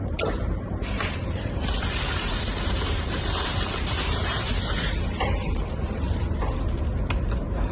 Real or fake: fake